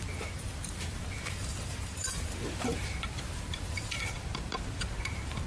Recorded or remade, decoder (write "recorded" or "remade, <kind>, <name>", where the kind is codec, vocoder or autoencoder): remade, vocoder, BigVGAN v2